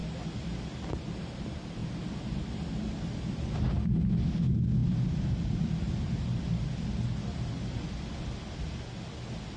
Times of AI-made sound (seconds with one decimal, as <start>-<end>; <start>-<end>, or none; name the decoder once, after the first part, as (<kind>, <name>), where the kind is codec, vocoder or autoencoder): 4.8-5.6 (vocoder, BigVGAN v2)